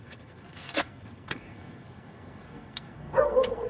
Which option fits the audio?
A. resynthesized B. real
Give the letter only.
A